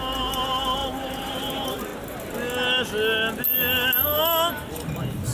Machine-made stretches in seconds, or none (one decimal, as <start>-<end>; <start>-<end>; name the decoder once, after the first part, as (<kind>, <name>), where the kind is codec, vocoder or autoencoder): 0.0-1.9 (vocoder, BigVGAN v2); 4.5-5.3